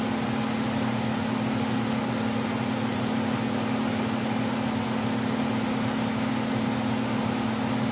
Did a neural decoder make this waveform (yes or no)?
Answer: no